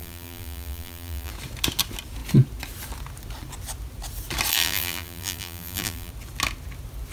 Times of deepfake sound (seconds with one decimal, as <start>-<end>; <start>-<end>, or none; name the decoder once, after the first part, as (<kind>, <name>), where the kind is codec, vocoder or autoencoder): 0.0-1.3 (vocoder, BigVGAN v2); 4.5-6.1